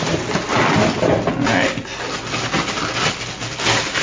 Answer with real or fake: real